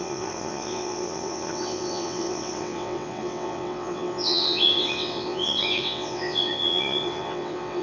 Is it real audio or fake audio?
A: fake